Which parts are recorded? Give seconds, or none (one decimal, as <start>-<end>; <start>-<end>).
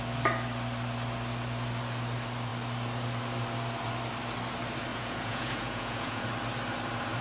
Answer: 0.0-4.9; 6.2-7.2